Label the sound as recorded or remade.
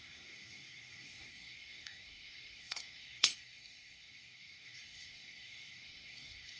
remade